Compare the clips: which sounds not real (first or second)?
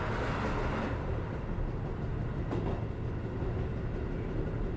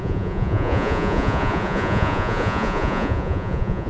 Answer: second